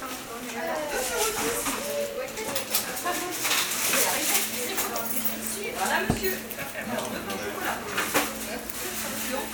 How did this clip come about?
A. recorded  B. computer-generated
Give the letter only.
A